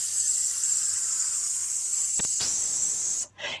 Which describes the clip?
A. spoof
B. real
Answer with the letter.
B